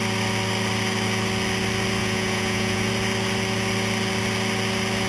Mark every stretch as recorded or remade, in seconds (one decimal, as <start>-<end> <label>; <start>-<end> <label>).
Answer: 0.0-2.0 recorded; 2.0-2.9 remade; 2.9-5.1 recorded